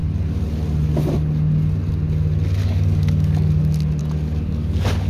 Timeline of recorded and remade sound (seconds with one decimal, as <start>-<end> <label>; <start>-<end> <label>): 0.0-2.6 recorded; 2.6-3.6 remade; 3.6-4.0 recorded; 4.0-5.1 remade